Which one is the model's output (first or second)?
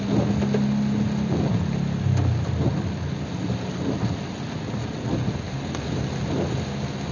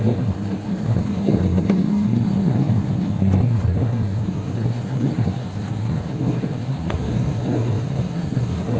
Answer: second